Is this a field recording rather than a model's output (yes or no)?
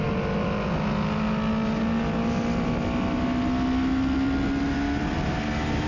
yes